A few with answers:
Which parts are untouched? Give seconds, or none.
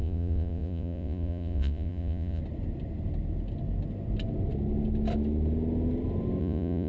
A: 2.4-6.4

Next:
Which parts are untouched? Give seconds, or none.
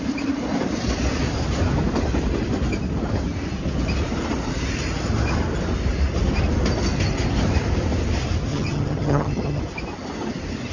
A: 0.0-8.5; 9.6-10.7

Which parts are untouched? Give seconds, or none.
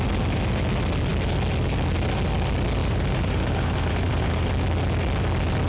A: 0.0-2.8; 4.5-5.7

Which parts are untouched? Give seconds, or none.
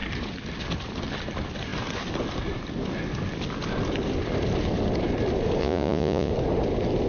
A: 0.0-5.6; 6.3-7.1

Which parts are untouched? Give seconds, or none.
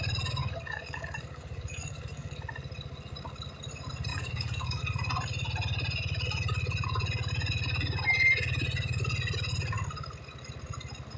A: 0.0-0.4; 2.4-4.1; 4.8-11.2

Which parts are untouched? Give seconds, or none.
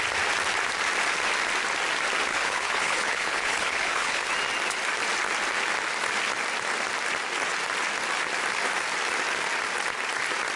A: 0.0-2.3; 4.3-10.6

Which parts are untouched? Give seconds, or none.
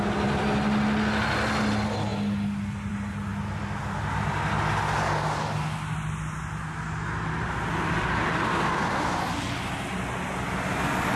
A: 0.0-11.2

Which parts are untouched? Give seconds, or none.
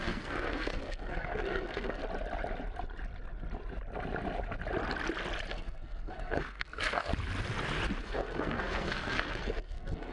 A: 2.0-5.5; 7.1-8.0